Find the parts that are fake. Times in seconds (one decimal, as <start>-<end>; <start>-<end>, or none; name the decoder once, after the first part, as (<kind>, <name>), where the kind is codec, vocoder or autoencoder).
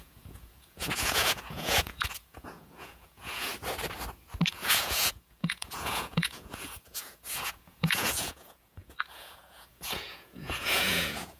0.0-3.5 (vocoder, Vocos); 4.5-11.4